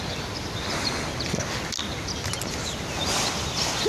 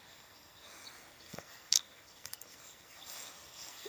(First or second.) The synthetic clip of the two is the second